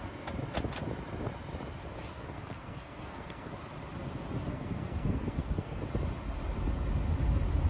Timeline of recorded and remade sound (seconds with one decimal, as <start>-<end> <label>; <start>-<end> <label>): 0.0-2.1 recorded; 2.1-3.5 remade; 3.5-4.5 recorded; 4.5-5.8 remade; 5.8-7.7 recorded

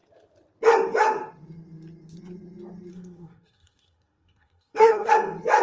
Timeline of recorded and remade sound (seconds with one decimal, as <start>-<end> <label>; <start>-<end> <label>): 0.0-2.9 recorded; 2.9-5.1 remade; 5.1-5.6 recorded

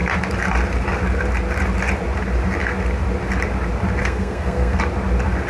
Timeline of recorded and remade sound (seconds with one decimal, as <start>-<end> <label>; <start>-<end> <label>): 0.0-4.0 recorded; 4.0-4.8 remade; 4.8-5.5 recorded